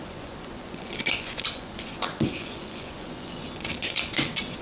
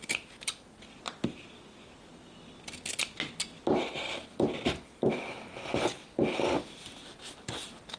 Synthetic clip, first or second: first